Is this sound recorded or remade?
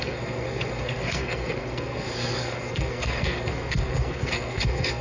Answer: remade